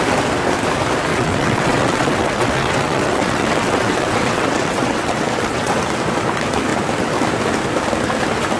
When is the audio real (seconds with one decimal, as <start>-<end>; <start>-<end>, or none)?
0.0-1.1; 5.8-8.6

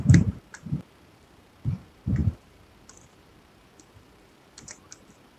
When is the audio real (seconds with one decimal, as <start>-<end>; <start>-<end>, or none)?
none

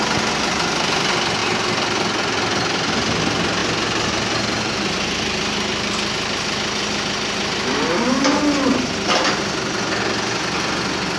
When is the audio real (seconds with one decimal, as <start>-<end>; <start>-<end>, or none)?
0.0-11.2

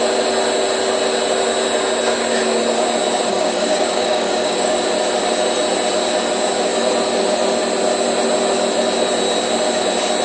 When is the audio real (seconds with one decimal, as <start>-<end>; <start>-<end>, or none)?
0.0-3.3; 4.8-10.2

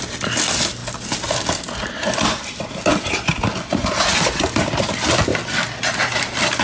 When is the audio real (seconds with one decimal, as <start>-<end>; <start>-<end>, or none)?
0.0-6.6

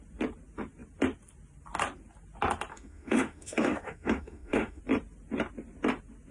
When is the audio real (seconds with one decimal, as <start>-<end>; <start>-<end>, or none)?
0.0-2.7; 4.8-6.3